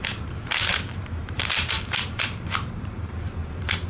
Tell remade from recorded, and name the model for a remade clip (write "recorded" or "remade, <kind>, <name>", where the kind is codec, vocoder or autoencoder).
remade, vocoder, BigVGAN v2